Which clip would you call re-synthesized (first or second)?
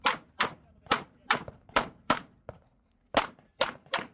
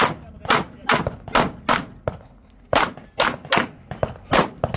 first